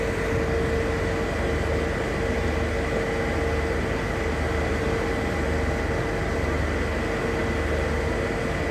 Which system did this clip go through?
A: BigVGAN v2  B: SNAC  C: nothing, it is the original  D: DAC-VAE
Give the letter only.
C